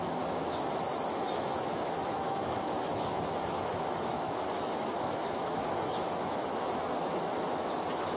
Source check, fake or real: fake